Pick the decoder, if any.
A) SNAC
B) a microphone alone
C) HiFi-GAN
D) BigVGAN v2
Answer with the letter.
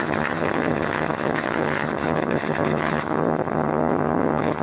C